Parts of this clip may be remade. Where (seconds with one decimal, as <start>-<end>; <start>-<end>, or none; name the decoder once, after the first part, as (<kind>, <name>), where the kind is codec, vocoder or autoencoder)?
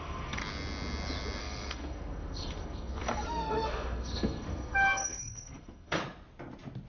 0.0-0.4 (codec, SNAC); 1.4-6.0